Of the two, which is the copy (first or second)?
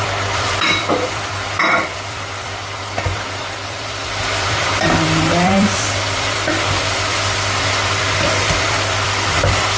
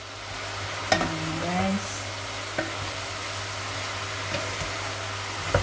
first